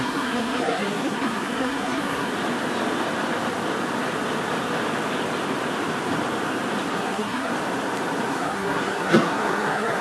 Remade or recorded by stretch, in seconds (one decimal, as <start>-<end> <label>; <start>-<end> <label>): 0.0-2.3 remade; 2.3-6.9 recorded; 6.9-7.5 remade; 7.5-8.3 recorded; 8.3-10.0 remade